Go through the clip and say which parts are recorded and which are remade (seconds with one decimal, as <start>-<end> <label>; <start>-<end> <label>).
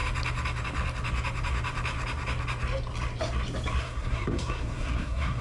0.0-3.8 recorded; 3.8-5.4 remade